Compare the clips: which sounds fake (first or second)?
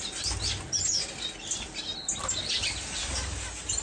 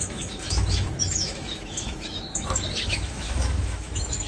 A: second